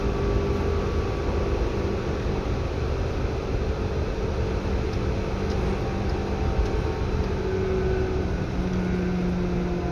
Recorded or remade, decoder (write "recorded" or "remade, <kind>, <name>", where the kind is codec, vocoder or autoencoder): recorded